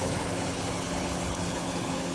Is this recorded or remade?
remade